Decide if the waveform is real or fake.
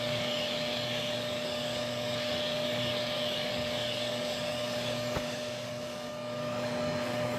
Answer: fake